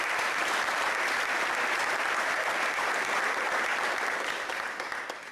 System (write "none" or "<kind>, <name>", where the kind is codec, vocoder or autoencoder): vocoder, BigVGAN v2